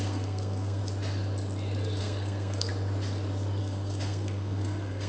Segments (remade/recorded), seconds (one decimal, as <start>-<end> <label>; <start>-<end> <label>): 0.0-0.8 remade; 0.8-2.0 recorded; 2.0-2.7 remade; 2.7-3.6 recorded; 3.6-5.1 remade